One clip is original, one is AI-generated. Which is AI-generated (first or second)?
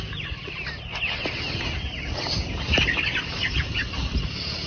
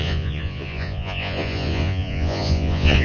second